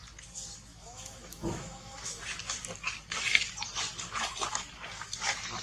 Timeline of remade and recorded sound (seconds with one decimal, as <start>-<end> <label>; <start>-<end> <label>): 0.0-0.7 recorded; 0.7-2.2 remade; 2.2-5.6 recorded